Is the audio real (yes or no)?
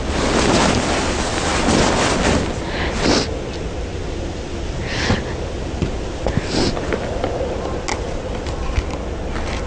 yes